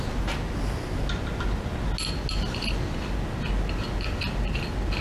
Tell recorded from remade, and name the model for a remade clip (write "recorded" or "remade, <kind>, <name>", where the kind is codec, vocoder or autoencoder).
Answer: recorded